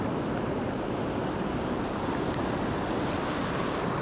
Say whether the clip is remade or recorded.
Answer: recorded